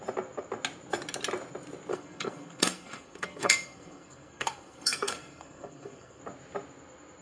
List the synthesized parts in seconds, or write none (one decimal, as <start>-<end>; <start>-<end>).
1.9-6.2